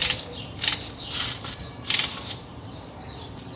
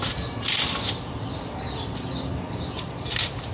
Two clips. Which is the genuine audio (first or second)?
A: second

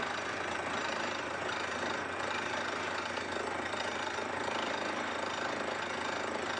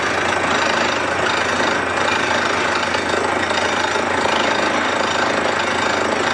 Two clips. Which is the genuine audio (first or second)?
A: second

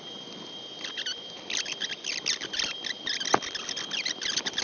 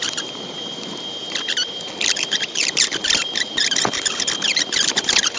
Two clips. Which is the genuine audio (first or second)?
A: first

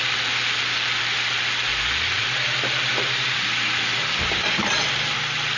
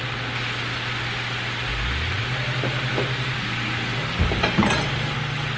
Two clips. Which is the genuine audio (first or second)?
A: second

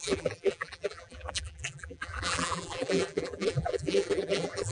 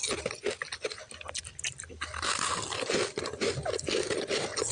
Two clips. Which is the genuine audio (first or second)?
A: second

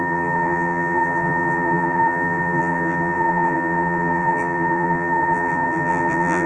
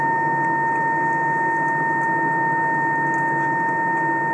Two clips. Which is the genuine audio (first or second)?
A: second